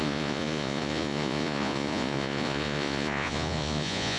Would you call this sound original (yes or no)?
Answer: no